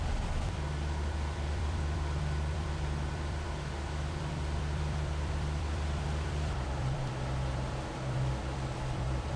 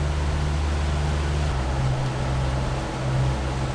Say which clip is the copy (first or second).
first